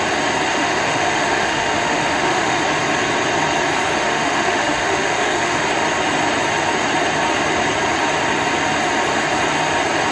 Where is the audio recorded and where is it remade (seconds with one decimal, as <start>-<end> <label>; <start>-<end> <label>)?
0.0-0.5 recorded; 0.5-2.6 remade; 2.6-4.0 recorded; 4.0-5.6 remade; 5.6-10.1 recorded